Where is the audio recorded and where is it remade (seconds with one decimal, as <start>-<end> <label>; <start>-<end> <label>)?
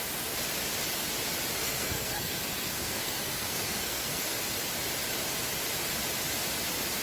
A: 0.0-1.6 recorded; 1.6-4.4 remade; 4.4-7.0 recorded